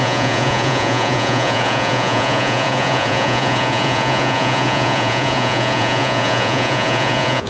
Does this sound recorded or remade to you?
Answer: remade